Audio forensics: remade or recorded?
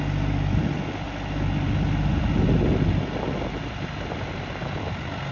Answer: recorded